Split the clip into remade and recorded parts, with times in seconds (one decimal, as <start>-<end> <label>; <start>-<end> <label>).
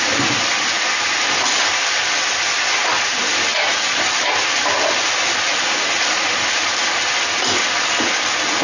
0.0-8.6 recorded